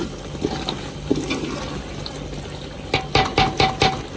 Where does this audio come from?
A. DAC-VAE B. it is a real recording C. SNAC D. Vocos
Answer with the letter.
B